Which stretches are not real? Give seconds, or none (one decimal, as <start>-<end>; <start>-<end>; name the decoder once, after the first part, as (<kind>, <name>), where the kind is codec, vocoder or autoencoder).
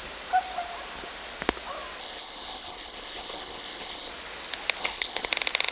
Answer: 2.0-4.1 (codec, HILCodec); 4.8-5.3